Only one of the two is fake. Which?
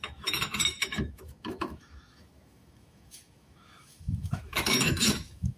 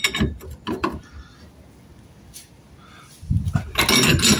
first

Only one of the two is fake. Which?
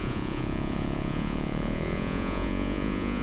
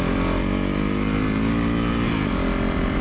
first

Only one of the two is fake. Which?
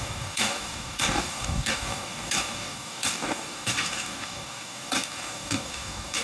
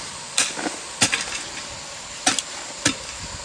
first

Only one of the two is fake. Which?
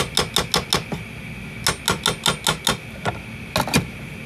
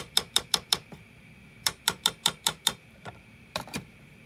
second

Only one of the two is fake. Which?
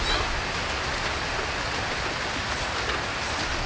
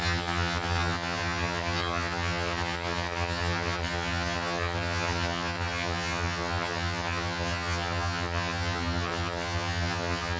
second